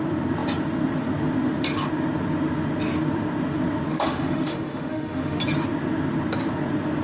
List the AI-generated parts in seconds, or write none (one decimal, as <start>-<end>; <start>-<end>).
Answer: 3.9-5.4

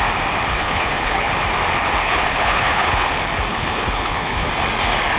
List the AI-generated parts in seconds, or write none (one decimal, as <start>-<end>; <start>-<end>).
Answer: 0.5-1.3; 2.0-3.1; 3.5-4.5

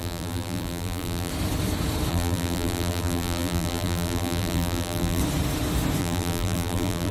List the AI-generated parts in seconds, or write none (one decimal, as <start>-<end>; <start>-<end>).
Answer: 0.0-1.3; 2.1-5.2; 6.0-7.1